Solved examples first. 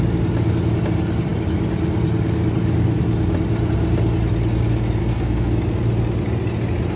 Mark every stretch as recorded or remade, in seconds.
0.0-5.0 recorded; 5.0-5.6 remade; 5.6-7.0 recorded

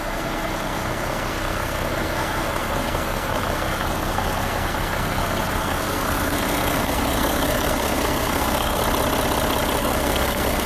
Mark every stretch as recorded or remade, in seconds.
0.0-8.8 remade; 8.8-9.8 recorded; 9.8-10.7 remade

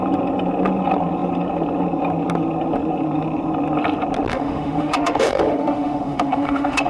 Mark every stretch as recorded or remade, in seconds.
0.0-4.3 recorded; 4.3-6.9 remade

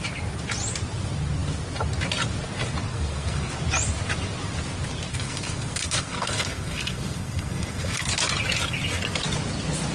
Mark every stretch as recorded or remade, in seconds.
0.0-2.9 recorded; 2.9-3.5 remade; 3.5-5.1 recorded; 5.1-8.1 remade; 8.1-9.9 recorded

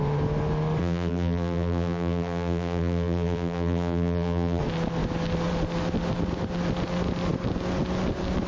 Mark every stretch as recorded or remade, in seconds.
0.0-0.8 recorded; 0.8-4.6 remade; 4.6-8.5 recorded